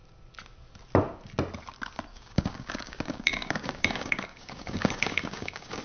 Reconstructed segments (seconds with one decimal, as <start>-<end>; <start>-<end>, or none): 2.1-5.8